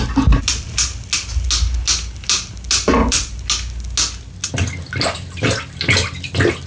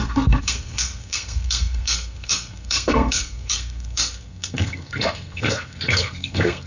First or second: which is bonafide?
first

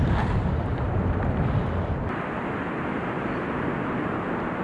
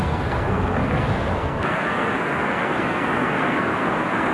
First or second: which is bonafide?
first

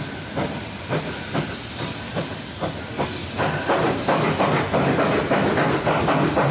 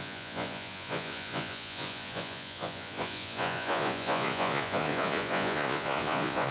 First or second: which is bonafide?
first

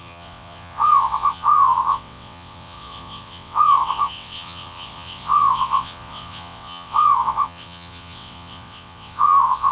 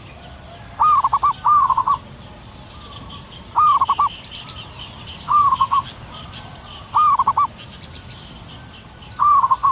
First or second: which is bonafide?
second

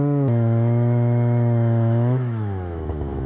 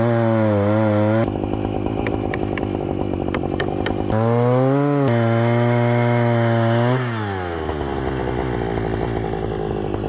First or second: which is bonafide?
second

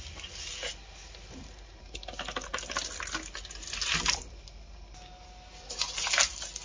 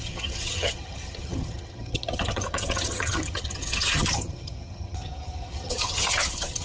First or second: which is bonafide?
first